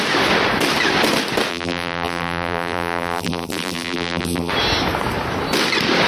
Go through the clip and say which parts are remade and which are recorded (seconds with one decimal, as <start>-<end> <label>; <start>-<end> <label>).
0.0-1.5 recorded; 1.5-4.5 remade; 4.5-6.1 recorded